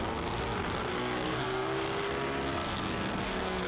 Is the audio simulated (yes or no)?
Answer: yes